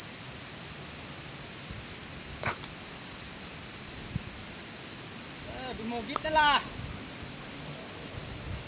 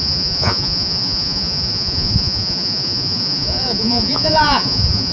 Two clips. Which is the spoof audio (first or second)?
second